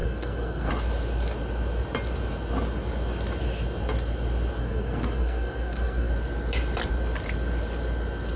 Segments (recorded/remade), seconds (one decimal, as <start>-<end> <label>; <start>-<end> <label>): 0.0-0.7 remade; 0.7-4.6 recorded; 4.6-6.1 remade; 6.1-8.4 recorded